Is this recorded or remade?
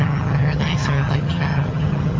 remade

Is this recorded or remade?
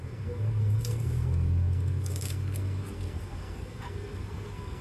remade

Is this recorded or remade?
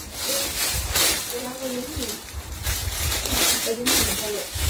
remade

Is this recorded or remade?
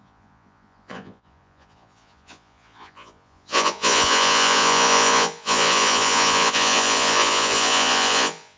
remade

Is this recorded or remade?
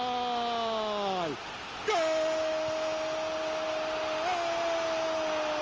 recorded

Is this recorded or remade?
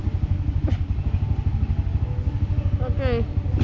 recorded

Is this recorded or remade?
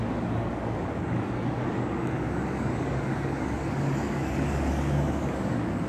remade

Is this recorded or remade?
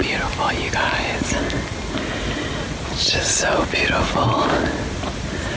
recorded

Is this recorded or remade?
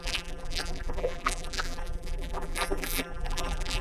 remade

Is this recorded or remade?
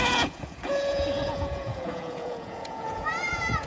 remade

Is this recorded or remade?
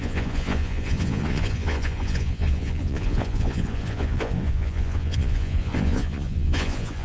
remade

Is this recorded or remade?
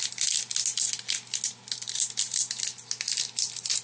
recorded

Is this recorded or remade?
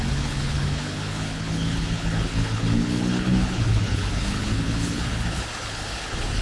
remade